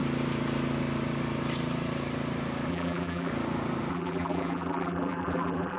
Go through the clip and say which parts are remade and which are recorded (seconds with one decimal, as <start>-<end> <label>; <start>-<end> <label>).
0.0-2.7 recorded; 2.7-3.3 remade; 3.3-3.9 recorded; 3.9-5.8 remade